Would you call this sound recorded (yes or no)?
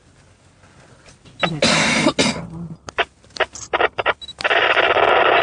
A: yes